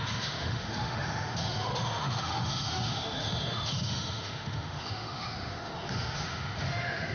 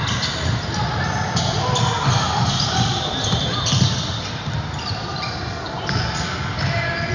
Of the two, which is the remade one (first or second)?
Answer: first